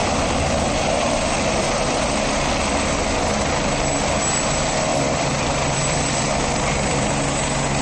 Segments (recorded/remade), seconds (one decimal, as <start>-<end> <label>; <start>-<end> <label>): 0.0-1.8 remade; 1.8-4.9 recorded; 4.9-7.1 remade; 7.1-7.8 recorded

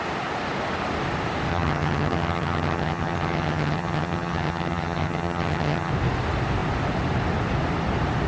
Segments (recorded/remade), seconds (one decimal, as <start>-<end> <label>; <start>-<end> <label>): 0.0-1.5 recorded; 1.5-5.9 remade; 5.9-8.3 recorded

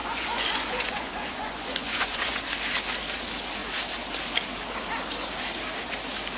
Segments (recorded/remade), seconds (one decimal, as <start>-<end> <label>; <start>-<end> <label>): 0.0-2.4 remade; 2.4-6.4 recorded

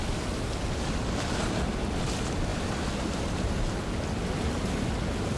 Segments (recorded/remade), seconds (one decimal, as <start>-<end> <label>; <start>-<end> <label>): 0.0-5.4 recorded

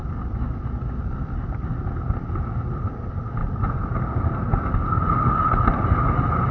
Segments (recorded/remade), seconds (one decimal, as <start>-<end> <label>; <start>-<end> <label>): 0.0-6.5 recorded

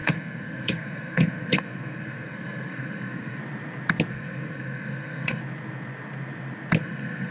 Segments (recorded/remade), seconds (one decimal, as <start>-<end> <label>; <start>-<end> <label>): 0.0-3.4 remade; 3.4-4.1 recorded; 4.1-5.4 remade; 5.4-6.8 recorded; 6.8-7.3 remade